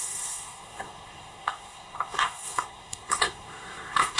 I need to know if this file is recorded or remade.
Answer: remade